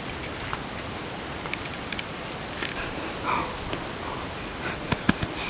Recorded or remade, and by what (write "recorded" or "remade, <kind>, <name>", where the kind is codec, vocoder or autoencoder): recorded